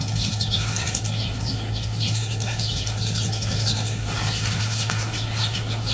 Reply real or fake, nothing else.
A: fake